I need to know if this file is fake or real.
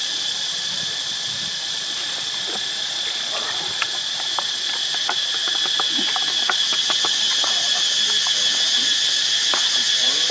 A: real